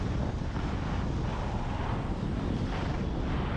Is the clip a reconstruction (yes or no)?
no